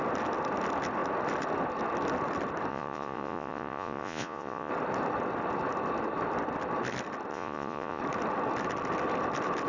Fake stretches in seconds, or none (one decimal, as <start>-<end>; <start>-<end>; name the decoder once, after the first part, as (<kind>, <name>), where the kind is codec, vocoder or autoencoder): 2.7-4.7 (vocoder, Vocos); 7.3-8.0